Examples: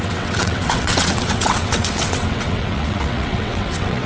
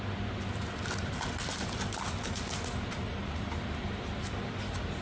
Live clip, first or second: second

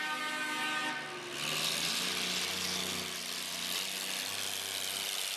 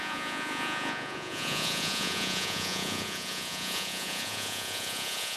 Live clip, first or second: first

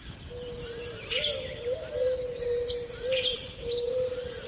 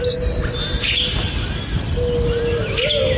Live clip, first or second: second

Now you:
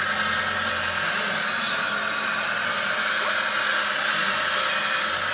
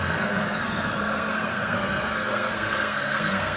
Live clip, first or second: first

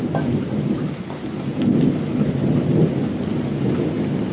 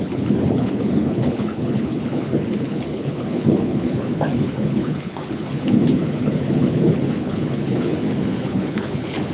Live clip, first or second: first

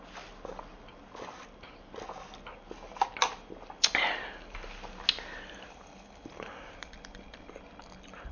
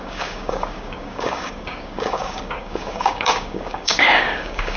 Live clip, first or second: first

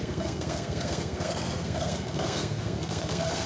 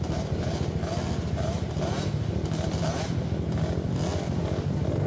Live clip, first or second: second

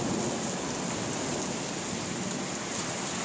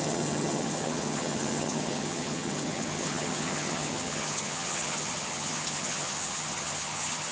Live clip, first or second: first